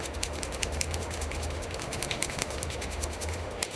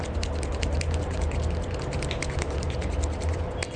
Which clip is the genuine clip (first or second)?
second